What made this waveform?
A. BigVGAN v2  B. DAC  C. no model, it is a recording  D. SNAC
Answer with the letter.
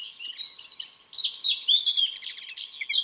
C